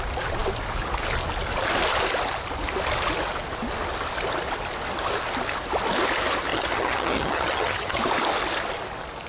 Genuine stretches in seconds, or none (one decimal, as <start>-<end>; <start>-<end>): 0.0-6.5; 8.0-9.3